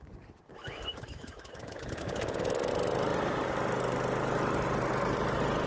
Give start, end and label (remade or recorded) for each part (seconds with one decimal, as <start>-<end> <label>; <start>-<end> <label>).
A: 0.0-0.5 recorded; 0.5-2.7 remade; 2.7-5.7 recorded